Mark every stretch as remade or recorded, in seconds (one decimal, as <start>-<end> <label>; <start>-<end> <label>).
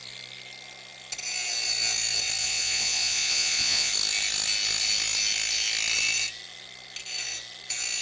0.0-2.4 recorded; 2.4-3.9 remade; 3.9-8.0 recorded